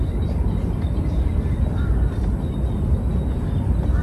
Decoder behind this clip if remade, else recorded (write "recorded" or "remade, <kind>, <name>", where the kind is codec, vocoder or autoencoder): recorded